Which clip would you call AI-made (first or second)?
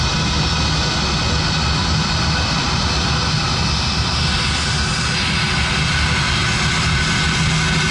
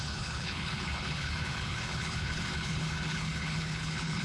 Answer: second